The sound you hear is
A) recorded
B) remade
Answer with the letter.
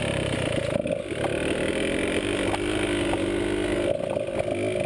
A